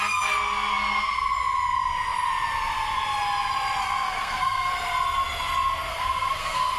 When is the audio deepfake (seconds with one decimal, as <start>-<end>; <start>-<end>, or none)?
3.8-4.7; 5.9-6.8